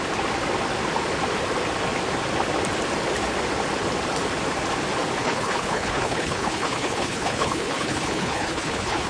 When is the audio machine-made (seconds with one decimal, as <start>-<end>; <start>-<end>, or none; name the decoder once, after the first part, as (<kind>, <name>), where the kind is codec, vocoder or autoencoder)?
5.2-9.1 (codec, HILCodec)